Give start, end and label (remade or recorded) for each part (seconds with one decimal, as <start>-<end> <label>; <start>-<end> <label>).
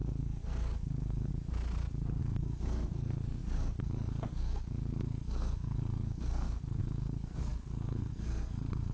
0.0-1.3 remade; 1.3-2.2 recorded; 2.2-8.9 remade